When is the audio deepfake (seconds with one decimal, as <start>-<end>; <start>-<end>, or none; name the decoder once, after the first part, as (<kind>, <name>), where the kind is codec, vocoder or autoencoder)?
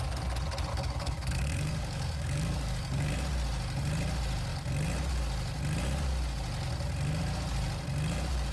0.7-3.1 (codec, DAC)